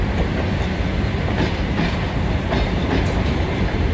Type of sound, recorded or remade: recorded